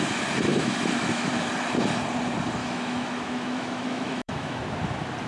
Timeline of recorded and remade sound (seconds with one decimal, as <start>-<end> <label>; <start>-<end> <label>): 0.0-0.5 recorded; 0.5-1.3 remade; 1.3-2.6 recorded; 2.6-4.6 remade; 4.6-5.3 recorded